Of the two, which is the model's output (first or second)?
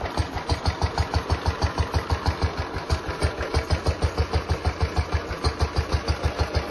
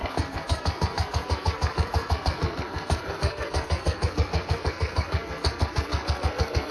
second